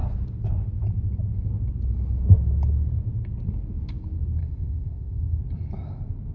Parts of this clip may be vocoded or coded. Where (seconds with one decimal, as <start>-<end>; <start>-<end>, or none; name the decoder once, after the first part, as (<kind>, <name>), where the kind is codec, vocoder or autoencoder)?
4.4-5.4 (codec, ZipCodec)